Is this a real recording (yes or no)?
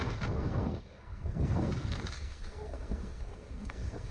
no